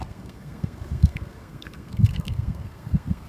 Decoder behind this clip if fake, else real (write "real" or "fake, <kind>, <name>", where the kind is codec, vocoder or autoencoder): fake, codec, SNAC